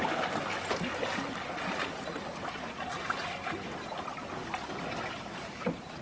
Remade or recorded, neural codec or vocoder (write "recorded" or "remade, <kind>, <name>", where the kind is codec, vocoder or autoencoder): recorded